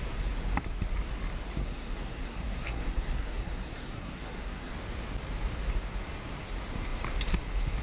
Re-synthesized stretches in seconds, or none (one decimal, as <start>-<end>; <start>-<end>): 1.6-4.7